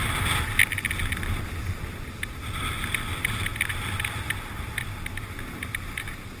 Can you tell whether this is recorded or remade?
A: recorded